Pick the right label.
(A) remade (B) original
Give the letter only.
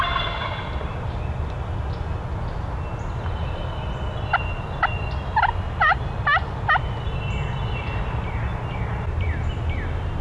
B